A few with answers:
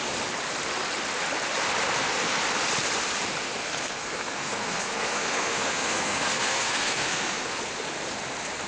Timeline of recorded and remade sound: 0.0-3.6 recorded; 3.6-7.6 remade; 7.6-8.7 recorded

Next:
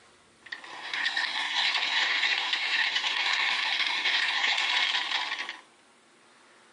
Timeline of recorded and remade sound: 0.0-0.7 recorded; 0.7-4.7 remade; 4.7-6.7 recorded

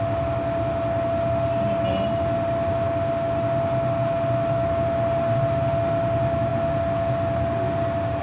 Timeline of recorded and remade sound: 0.0-8.2 recorded

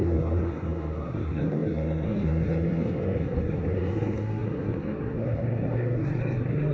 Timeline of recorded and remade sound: 0.0-6.7 remade

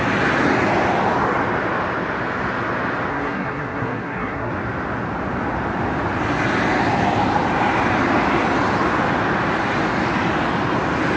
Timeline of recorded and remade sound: 0.0-3.1 recorded; 3.1-4.5 remade; 4.5-11.2 recorded

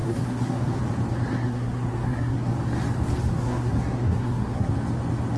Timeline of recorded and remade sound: 0.0-0.8 remade; 0.8-1.3 recorded; 1.3-2.5 remade; 2.5-3.3 recorded; 3.3-4.7 remade; 4.7-5.4 recorded

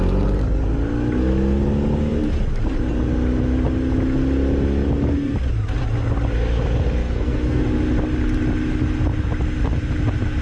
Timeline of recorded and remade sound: 0.0-7.0 recorded; 7.0-7.6 remade; 7.6-10.4 recorded

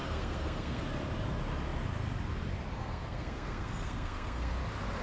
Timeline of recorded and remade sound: 0.0-0.8 remade; 0.8-2.8 recorded; 2.8-4.5 remade; 4.5-5.0 recorded